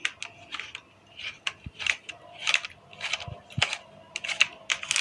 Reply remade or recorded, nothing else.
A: recorded